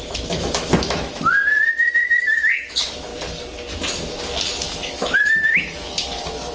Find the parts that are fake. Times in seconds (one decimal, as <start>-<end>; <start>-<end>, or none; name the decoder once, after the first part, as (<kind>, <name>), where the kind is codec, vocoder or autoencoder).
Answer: 0.0-1.3 (autoencoder, DAC-VAE); 1.9-3.1; 4.6-6.5